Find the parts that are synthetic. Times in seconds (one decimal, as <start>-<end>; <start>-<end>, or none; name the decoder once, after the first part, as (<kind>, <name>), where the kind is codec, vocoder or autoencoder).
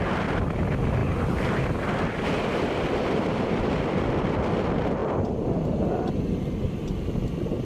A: none